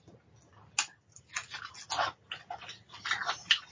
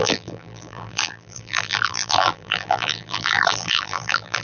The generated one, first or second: second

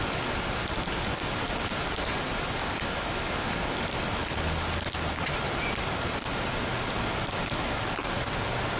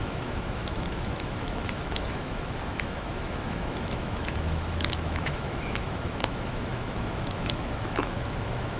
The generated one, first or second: second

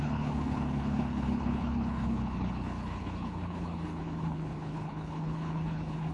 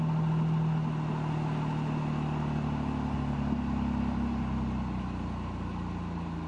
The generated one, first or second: first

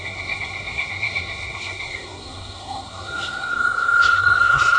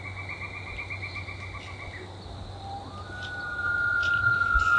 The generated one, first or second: first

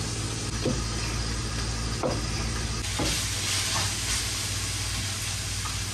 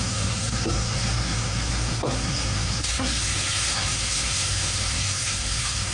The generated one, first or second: second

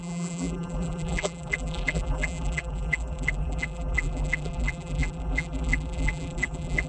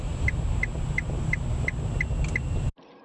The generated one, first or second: first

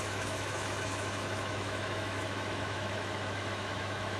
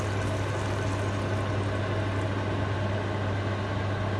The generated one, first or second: first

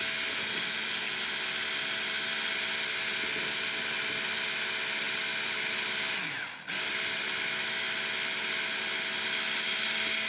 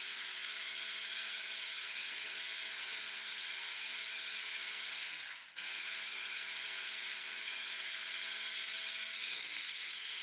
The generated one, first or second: second